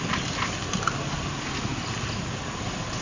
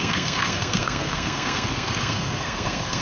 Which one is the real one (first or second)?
first